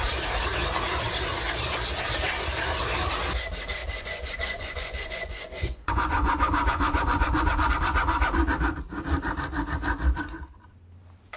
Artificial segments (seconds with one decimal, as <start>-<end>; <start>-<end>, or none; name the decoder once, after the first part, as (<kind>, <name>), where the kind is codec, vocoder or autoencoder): 3.8-7.7 (vocoder, Vocos)